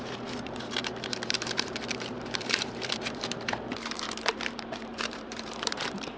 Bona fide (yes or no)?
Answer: no